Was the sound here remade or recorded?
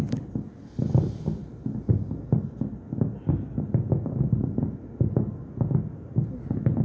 recorded